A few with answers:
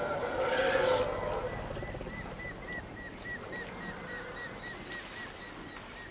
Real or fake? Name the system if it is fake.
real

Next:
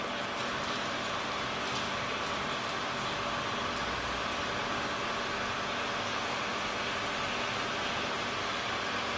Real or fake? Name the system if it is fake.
real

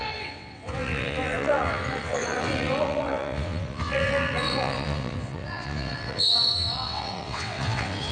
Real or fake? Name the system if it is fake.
fake, vocoder, WaveNeXt